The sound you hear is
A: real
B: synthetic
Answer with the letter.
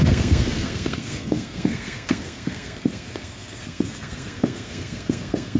B